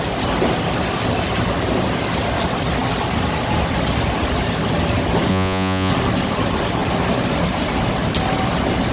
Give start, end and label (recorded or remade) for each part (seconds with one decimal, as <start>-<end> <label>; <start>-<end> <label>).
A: 0.0-5.3 recorded; 5.3-5.9 remade; 5.9-8.9 recorded